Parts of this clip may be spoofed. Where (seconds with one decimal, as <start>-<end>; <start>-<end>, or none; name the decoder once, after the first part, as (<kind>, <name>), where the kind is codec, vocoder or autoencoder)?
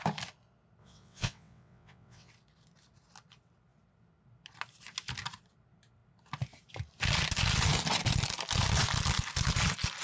0.8-2.3 (vocoder, WaveNeXt)